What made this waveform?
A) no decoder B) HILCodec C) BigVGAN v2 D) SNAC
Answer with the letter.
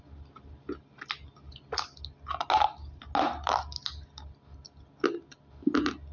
A